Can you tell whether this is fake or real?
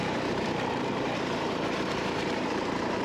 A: fake